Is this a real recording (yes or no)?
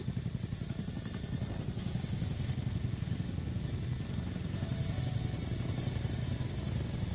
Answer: yes